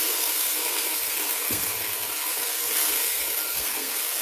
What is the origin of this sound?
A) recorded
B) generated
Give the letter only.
B